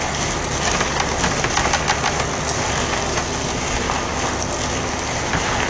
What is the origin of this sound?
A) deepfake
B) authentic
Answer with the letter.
B